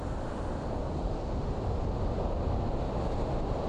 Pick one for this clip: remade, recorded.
recorded